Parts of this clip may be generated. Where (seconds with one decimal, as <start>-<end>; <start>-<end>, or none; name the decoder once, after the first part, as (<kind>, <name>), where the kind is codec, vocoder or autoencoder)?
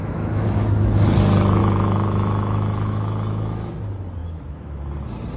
0.0-1.1 (autoencoder, DAC-VAE); 1.6-3.7; 4.2-4.8